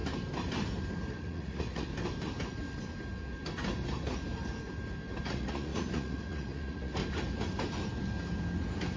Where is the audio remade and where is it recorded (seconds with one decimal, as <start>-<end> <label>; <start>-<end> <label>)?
0.0-1.1 recorded; 1.1-1.9 remade; 1.9-5.3 recorded; 5.3-7.0 remade; 7.0-9.0 recorded